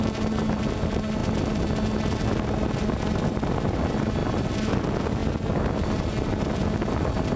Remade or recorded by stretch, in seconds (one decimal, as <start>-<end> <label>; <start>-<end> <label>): 0.0-7.4 recorded